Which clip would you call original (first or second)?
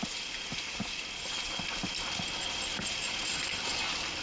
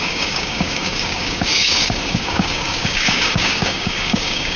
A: first